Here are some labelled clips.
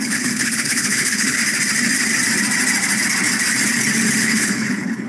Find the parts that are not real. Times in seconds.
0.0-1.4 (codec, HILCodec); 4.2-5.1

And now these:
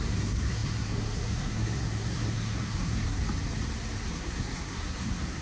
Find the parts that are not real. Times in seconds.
0.0-3.2 (codec, SNAC); 4.1-5.4

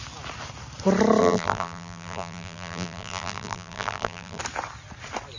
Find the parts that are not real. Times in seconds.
1.2-4.4 (vocoder, BigVGAN v2)

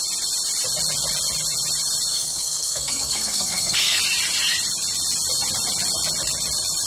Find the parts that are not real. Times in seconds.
2.1-4.0 (codec, SNAC)

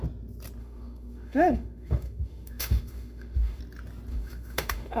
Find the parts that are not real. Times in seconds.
0.6-3.6 (autoencoder, DAC-VAE); 4.1-5.0